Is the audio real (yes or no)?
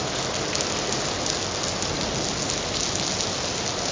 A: yes